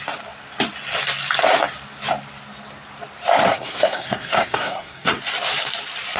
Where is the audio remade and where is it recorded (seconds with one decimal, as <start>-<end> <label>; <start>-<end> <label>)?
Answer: 0.0-3.5 recorded; 3.5-5.2 remade; 5.2-6.2 recorded